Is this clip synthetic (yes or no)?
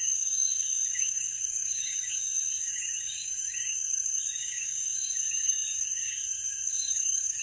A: yes